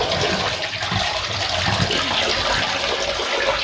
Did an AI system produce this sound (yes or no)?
no